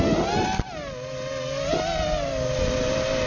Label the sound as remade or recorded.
recorded